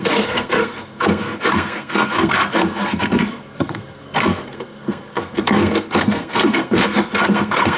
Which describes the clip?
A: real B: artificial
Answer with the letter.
B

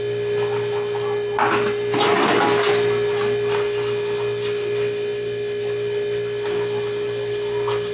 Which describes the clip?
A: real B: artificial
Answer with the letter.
A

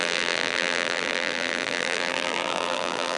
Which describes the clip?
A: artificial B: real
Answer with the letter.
A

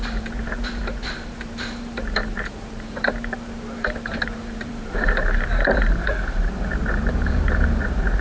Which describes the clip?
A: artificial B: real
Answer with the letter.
A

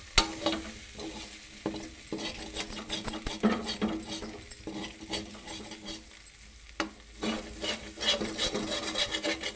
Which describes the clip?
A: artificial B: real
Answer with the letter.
B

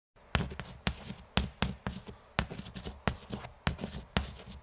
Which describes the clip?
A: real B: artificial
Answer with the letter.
A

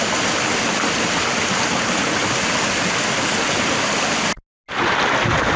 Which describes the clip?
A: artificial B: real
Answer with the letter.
B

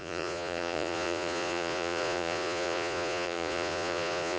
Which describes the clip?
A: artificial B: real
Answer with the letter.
A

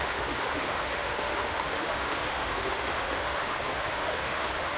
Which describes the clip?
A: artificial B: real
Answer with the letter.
A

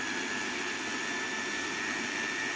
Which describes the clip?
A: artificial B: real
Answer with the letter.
B